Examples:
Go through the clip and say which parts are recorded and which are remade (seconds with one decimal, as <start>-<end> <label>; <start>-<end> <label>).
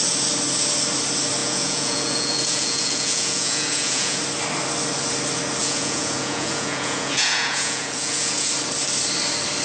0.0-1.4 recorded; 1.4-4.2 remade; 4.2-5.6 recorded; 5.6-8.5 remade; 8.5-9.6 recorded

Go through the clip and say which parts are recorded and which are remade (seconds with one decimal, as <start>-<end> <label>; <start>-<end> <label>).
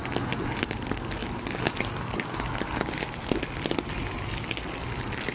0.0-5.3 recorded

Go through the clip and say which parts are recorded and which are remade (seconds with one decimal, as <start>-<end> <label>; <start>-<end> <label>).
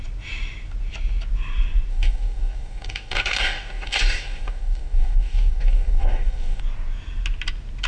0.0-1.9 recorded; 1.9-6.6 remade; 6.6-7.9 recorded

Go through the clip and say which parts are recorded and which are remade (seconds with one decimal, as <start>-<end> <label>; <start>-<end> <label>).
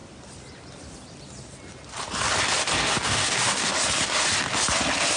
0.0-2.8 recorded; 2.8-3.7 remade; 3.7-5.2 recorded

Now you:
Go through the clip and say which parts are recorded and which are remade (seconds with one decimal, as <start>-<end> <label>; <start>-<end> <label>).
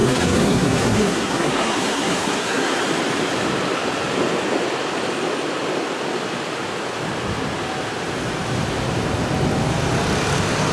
0.0-2.8 remade; 2.8-10.7 recorded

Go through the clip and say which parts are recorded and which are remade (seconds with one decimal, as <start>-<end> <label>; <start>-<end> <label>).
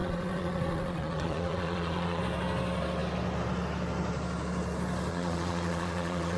0.0-2.2 remade; 2.2-5.1 recorded; 5.1-6.4 remade